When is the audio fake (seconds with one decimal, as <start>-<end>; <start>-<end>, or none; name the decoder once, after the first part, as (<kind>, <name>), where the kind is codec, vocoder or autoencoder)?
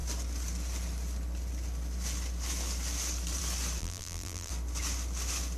3.8-4.5 (vocoder, BigVGAN v2)